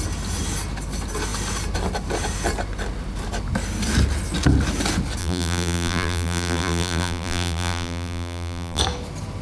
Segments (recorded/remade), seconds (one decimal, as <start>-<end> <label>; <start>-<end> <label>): 0.0-5.2 recorded; 5.2-8.8 remade; 8.8-9.4 recorded